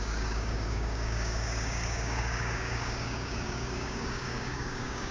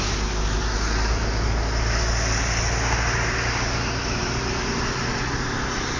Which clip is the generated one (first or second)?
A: first